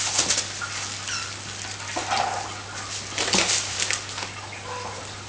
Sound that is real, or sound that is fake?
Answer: real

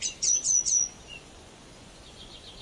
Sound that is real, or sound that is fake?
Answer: fake